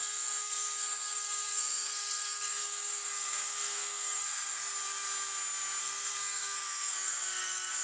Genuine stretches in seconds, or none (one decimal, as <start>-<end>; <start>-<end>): 4.6-5.8